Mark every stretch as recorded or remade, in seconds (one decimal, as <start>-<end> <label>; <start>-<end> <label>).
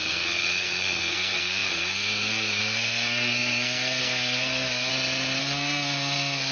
0.0-4.9 remade; 4.9-5.4 recorded; 5.4-6.5 remade